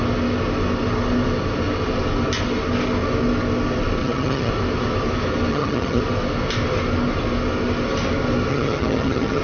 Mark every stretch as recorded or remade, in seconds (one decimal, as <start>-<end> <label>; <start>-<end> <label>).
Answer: 0.0-4.0 recorded; 4.0-4.5 remade; 4.5-5.5 recorded; 5.5-6.0 remade; 6.0-8.5 recorded; 8.5-9.4 remade